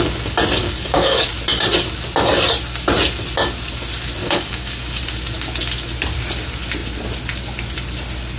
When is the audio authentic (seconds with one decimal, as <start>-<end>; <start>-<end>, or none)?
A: 0.0-0.6; 1.3-4.2; 5.0-8.4

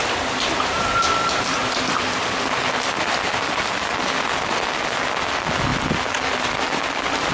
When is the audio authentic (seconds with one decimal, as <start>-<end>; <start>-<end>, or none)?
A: 0.0-7.3

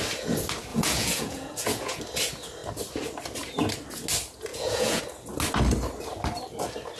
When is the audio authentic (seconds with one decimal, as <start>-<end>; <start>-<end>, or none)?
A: 0.0-0.7; 2.0-4.5; 5.0-7.0

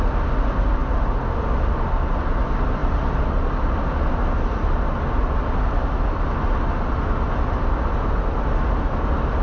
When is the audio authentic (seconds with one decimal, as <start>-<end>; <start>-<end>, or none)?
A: 0.0-9.4

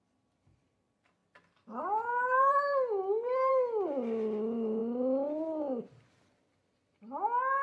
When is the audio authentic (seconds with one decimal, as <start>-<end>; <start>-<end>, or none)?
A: 0.0-1.2; 3.5-7.6

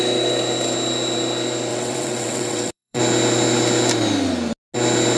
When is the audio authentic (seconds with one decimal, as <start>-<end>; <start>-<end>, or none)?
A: 0.0-1.7; 3.0-5.2

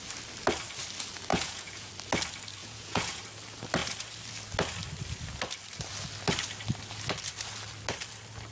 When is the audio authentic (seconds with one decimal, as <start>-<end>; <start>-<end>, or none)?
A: 0.0-1.3; 1.9-2.6; 3.2-8.5